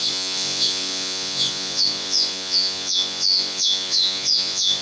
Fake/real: fake